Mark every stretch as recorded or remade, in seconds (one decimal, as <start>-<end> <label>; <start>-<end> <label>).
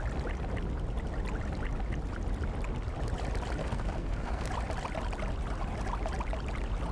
0.0-3.6 recorded; 3.6-4.5 remade; 4.5-6.9 recorded